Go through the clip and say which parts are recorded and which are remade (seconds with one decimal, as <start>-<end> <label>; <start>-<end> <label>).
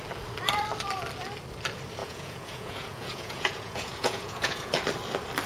0.0-2.0 recorded; 2.0-4.7 remade; 4.7-5.5 recorded